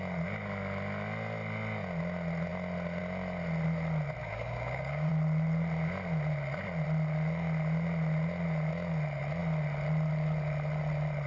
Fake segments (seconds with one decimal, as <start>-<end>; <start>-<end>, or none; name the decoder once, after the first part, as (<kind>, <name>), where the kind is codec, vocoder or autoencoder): 4.2-5.1 (codec, DAC)